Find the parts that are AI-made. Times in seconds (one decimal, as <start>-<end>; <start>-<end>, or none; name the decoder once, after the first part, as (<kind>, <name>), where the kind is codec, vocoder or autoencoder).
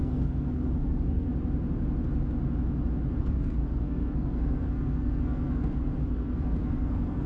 0.0-1.3 (codec, SNAC); 3.2-7.3